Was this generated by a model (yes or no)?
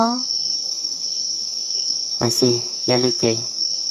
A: yes